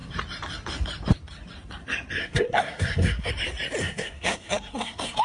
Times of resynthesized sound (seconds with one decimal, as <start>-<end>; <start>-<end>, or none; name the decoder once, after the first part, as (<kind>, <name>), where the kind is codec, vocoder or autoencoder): 2.2-3.3 (codec, SNAC); 3.8-5.2